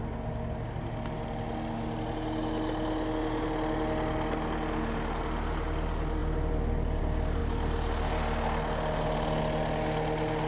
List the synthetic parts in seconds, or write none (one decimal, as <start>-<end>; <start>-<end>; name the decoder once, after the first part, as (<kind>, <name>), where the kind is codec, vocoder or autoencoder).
none